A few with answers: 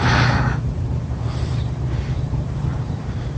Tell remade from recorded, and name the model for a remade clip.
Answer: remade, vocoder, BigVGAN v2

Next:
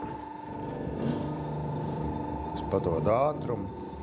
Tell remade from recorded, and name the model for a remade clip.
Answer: remade, vocoder, BigVGAN v2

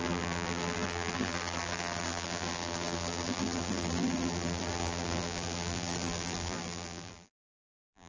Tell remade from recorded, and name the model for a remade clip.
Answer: remade, vocoder, BigVGAN v2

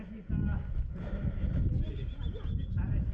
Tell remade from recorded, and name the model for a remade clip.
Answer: recorded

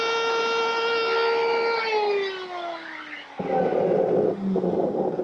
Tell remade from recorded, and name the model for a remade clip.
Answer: recorded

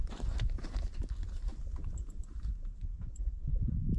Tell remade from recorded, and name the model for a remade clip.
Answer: remade, vocoder, BigVGAN v2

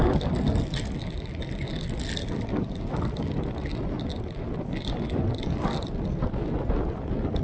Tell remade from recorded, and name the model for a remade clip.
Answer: recorded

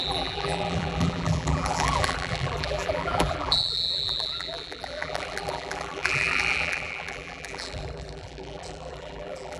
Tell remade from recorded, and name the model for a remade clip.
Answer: remade, vocoder, BigVGAN v2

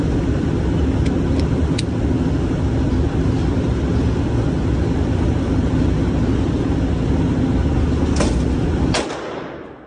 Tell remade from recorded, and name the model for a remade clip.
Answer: recorded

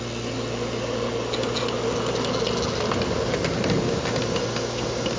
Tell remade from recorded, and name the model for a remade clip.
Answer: recorded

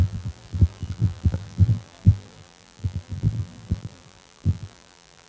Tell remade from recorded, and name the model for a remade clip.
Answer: remade, vocoder, BigVGAN v2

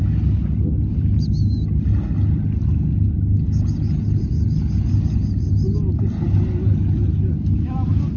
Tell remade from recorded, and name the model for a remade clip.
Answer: recorded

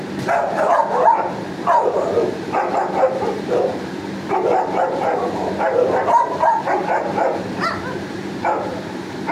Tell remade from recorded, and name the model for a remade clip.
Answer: remade, vocoder, BigVGAN v2